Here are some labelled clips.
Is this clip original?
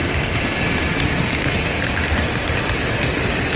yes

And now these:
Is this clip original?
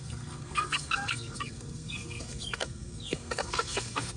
no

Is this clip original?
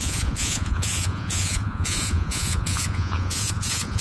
no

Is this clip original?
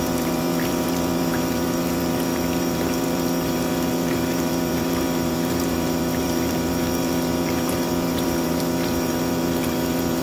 no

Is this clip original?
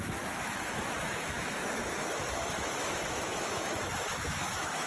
no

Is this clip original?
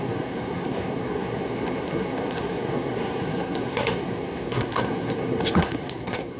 no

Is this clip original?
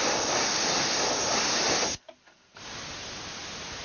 yes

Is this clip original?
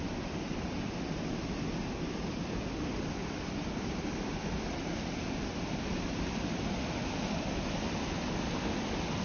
yes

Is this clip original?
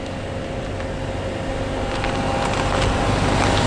yes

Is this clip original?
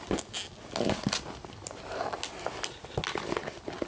yes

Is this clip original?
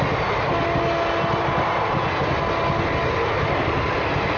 yes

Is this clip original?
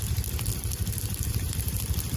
no